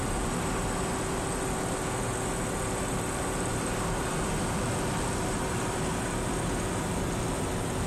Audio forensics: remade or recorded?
recorded